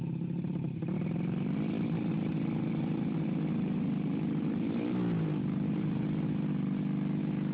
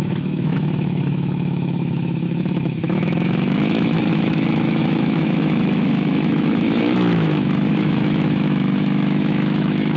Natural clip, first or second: first